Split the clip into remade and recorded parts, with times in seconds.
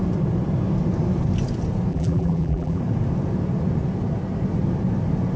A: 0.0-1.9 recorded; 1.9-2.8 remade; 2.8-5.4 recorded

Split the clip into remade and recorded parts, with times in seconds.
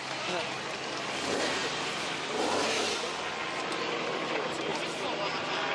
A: 0.0-1.6 recorded; 1.6-2.6 remade; 2.6-4.7 recorded; 4.7-5.3 remade; 5.3-5.7 recorded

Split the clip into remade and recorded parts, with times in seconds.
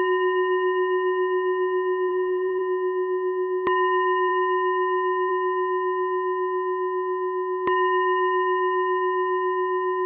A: 0.0-2.1 recorded; 2.1-2.6 remade; 2.6-10.1 recorded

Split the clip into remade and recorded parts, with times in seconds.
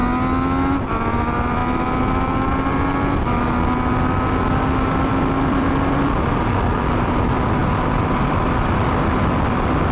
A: 0.0-1.1 recorded; 1.1-1.6 remade; 1.6-5.1 recorded; 5.1-9.9 remade